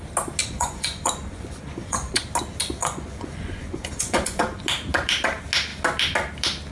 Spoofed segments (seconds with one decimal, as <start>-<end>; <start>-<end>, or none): 0.4-2.2; 2.8-4.6